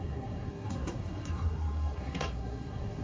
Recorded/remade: remade